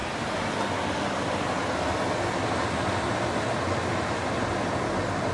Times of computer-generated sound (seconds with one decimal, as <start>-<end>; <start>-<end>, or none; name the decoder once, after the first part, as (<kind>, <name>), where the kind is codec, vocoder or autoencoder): none